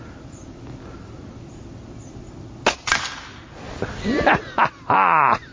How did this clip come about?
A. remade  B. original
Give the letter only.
B